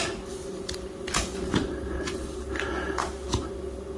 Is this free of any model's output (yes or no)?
yes